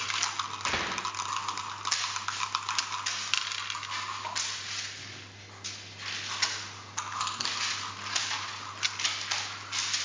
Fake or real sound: real